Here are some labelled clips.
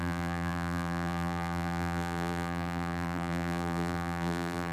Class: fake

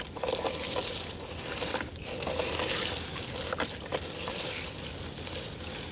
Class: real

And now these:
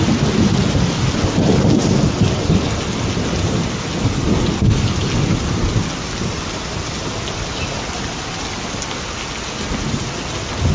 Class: real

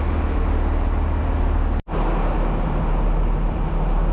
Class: real